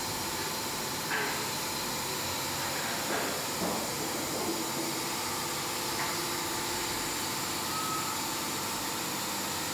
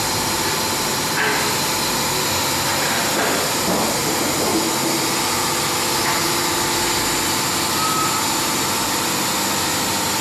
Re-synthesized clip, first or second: first